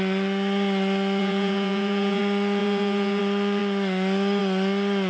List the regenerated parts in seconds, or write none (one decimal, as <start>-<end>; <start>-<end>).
1.2-2.2; 2.6-3.2